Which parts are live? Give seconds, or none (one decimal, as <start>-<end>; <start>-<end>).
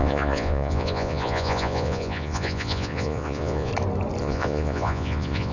3.7-4.2